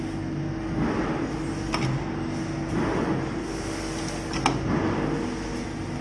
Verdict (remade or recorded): recorded